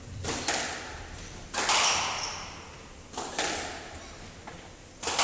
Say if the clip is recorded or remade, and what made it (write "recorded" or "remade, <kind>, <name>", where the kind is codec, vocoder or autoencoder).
recorded